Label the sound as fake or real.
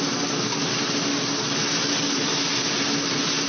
real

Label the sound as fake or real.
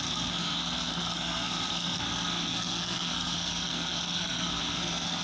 fake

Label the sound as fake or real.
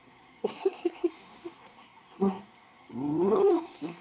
fake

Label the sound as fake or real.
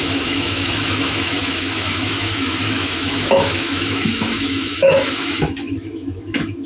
fake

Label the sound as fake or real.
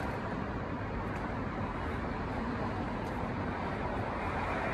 fake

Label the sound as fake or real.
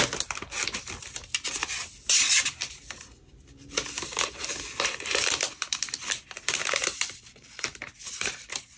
fake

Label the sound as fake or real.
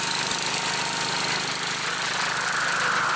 real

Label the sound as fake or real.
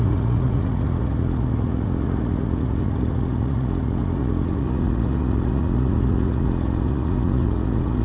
fake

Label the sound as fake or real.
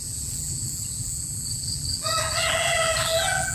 fake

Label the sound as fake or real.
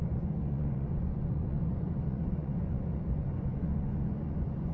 fake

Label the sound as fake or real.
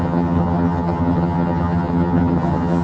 fake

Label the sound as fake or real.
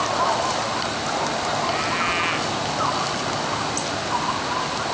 real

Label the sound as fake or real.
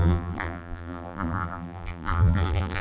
fake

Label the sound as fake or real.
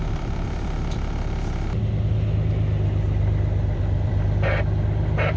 fake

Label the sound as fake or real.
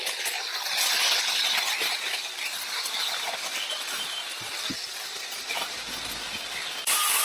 real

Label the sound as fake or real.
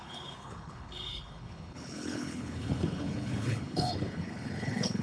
fake